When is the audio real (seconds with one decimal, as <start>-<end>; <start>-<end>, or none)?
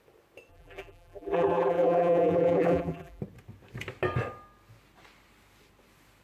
0.0-0.5; 3.2-6.2